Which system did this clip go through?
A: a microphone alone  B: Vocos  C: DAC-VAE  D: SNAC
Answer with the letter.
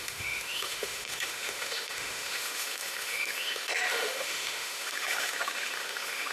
C